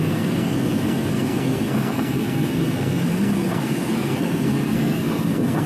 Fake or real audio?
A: fake